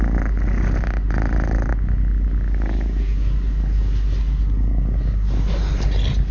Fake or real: real